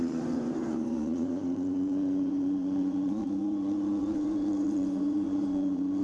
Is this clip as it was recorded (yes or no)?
no